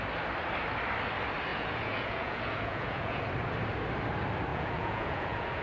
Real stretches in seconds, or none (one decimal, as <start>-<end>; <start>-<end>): 0.0-1.5; 3.2-4.5